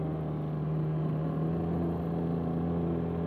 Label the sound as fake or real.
real